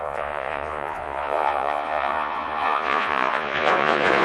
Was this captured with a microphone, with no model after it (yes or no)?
no